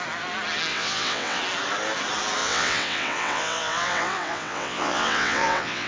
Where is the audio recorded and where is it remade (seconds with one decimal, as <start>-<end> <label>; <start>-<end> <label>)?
0.0-0.7 recorded; 0.7-1.4 remade; 1.4-2.4 recorded; 2.4-5.9 remade